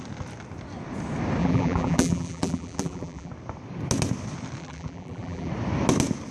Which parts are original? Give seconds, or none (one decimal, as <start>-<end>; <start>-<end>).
0.0-1.4; 3.3-4.6; 5.5-6.3